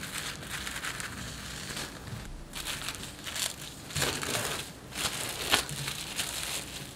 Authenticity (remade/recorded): recorded